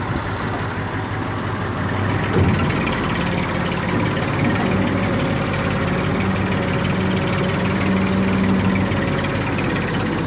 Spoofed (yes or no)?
no